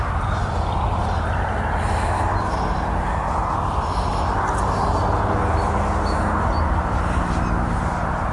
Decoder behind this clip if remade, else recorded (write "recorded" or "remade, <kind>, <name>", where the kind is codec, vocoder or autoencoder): recorded